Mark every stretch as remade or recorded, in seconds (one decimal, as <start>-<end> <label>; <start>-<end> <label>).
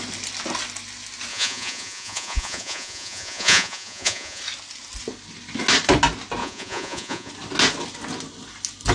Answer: 0.0-1.3 recorded; 1.3-4.4 remade; 4.4-6.4 recorded; 6.4-7.3 remade; 7.3-8.9 recorded